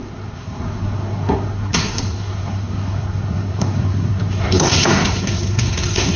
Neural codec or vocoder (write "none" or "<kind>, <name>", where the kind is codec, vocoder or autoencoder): codec, SNAC